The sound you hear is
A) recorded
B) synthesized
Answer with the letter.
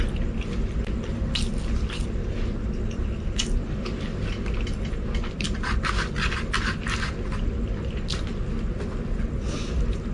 A